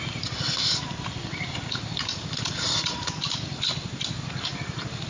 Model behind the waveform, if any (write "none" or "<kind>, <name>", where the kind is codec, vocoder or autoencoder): vocoder, BigVGAN v2